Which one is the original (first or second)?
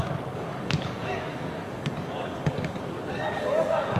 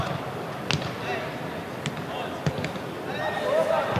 second